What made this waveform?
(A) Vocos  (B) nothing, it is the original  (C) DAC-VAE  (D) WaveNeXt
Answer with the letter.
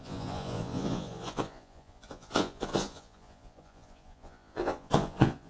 A